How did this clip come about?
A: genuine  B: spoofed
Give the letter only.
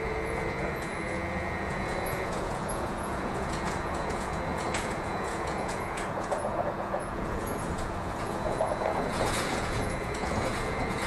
B